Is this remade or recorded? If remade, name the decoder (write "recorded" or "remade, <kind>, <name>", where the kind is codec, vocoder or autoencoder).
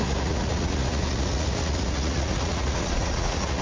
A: remade, vocoder, Vocos